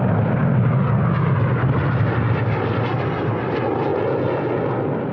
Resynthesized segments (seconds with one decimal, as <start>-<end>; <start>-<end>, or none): none